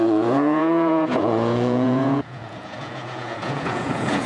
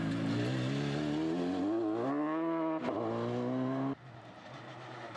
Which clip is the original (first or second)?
second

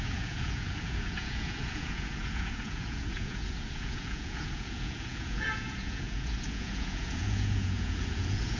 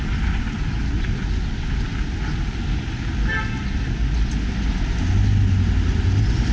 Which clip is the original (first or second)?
second